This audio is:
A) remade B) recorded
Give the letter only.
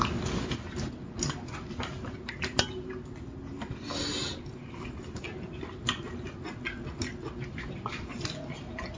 B